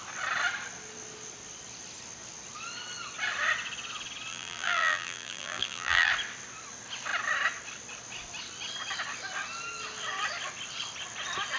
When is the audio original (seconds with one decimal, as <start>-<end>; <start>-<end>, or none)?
0.0-4.3; 6.1-11.6